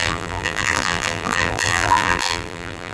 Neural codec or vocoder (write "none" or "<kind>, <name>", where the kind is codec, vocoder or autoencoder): vocoder, BigVGAN v2